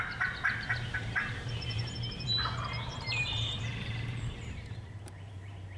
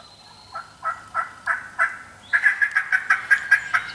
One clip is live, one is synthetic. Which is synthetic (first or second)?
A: first